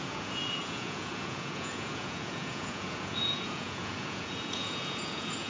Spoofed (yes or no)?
yes